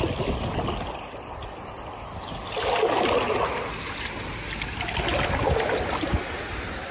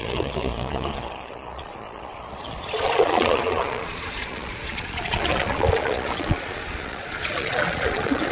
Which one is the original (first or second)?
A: first